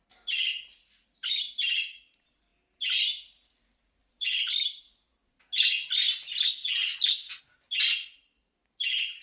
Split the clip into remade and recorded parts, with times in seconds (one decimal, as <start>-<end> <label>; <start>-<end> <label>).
0.0-9.2 recorded